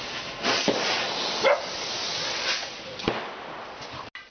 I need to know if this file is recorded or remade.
recorded